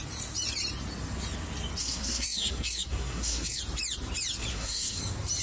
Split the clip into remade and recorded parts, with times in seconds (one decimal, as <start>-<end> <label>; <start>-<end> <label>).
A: 0.0-1.8 recorded; 1.8-3.6 remade; 3.6-4.5 recorded; 4.5-5.0 remade; 5.0-5.4 recorded